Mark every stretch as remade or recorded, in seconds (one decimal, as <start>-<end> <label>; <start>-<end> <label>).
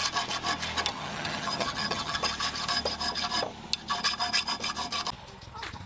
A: 0.0-0.9 recorded; 0.9-2.2 remade; 2.2-5.9 recorded